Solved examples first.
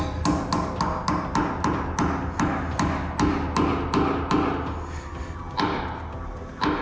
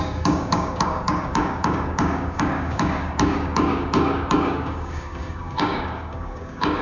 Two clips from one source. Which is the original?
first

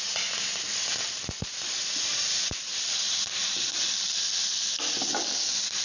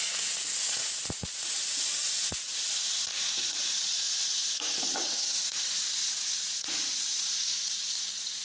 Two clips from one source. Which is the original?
first